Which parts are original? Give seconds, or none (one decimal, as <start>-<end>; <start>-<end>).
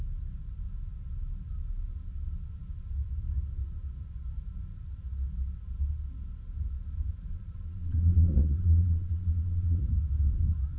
0.0-7.3; 9.8-10.8